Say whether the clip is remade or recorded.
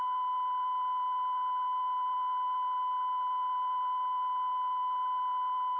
recorded